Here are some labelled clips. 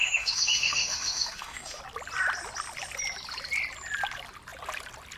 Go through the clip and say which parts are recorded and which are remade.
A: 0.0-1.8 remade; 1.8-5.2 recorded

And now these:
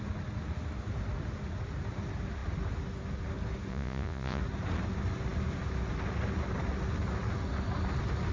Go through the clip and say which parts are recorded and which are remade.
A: 0.0-3.7 recorded; 3.7-4.4 remade; 4.4-8.3 recorded

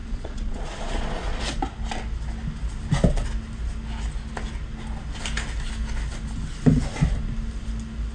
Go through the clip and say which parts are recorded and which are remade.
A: 0.0-1.4 remade; 1.4-8.1 recorded

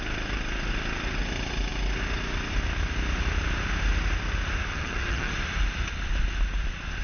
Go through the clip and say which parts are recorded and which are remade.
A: 0.0-4.7 recorded; 4.7-5.3 remade; 5.3-7.0 recorded

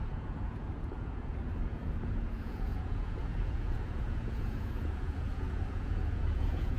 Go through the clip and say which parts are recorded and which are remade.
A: 0.0-6.8 remade

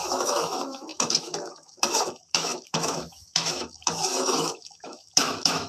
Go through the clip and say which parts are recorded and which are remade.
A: 0.0-5.7 remade

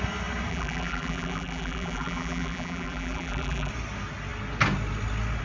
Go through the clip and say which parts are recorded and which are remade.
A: 0.0-0.5 recorded; 0.5-3.7 remade; 3.7-5.4 recorded

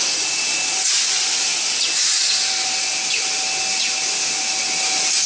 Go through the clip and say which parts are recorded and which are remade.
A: 0.0-5.3 recorded